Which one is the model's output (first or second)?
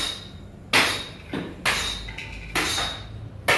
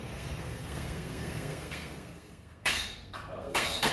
second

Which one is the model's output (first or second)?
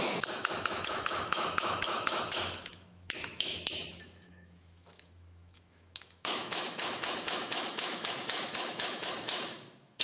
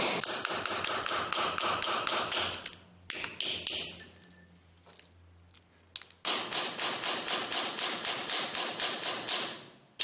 first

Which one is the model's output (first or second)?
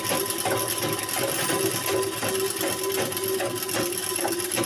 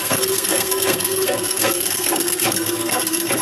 second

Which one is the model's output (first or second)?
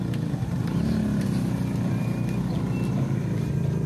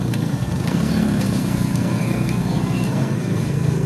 second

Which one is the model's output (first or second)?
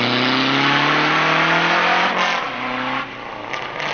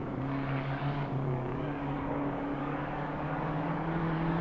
second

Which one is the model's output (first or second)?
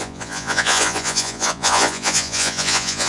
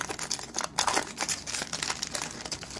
first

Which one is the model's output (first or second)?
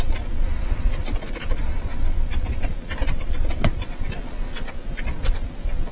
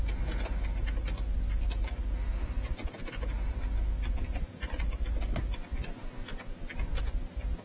first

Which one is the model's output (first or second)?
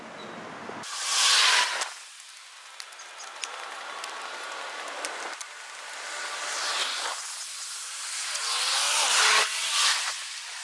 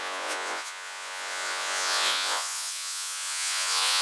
second